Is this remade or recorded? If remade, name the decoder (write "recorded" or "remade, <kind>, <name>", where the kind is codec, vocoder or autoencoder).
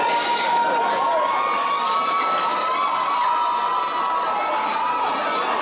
recorded